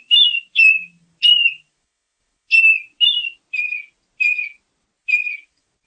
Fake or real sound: real